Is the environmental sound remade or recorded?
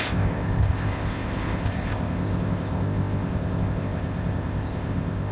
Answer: remade